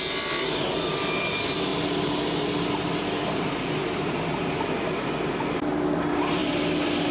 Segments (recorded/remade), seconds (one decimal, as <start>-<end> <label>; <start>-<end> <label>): 0.0-7.1 recorded